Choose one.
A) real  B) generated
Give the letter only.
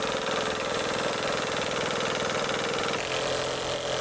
A